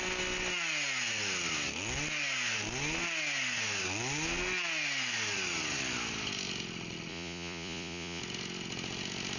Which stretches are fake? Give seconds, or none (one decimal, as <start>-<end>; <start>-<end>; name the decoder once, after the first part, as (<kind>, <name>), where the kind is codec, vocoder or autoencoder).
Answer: 7.1-8.2 (vocoder, Vocos)